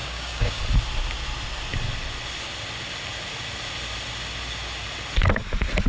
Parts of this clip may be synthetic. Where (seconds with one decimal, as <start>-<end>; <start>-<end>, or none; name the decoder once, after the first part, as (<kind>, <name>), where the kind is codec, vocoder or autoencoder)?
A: 0.0-0.6 (codec, DAC)